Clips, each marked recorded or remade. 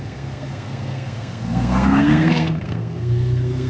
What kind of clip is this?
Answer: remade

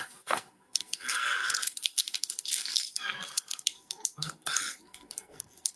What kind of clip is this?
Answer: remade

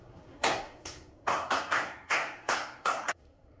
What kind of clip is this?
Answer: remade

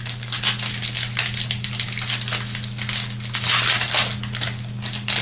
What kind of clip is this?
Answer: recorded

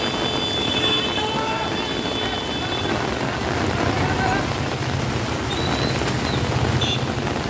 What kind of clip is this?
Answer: recorded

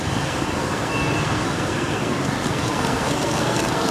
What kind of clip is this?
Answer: remade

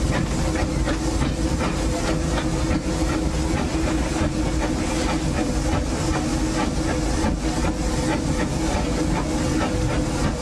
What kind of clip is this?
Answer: recorded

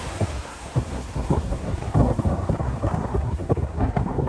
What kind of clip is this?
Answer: remade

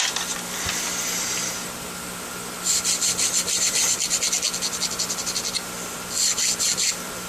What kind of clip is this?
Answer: recorded